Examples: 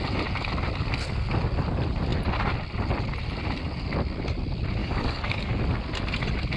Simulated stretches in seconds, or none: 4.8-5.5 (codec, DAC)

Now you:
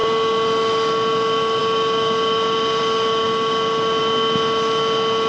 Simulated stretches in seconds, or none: none

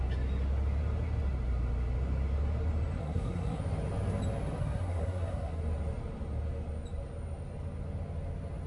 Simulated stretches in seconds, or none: 3.0-3.6 (codec, SNAC); 4.6-5.6

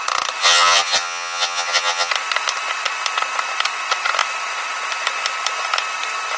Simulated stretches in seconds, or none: 0.4-2.1 (vocoder, HiFi-GAN)

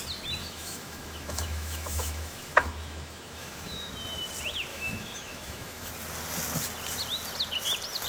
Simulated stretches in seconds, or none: 0.4-3.9 (autoencoder, DAC-VAE); 4.7-5.9

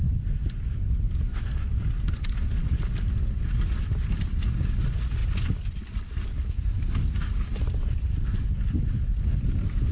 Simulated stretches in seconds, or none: none

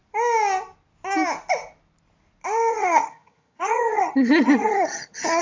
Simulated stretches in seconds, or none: 2.7-5.4 (vocoder, HiFi-GAN)